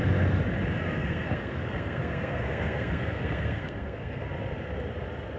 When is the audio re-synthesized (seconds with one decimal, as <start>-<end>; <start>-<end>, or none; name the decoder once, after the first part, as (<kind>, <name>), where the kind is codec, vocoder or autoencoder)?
1.0-4.2 (codec, SNAC)